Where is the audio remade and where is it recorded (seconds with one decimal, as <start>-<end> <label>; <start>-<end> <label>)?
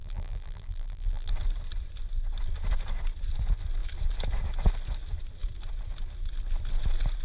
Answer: 0.0-1.3 remade; 1.3-7.2 recorded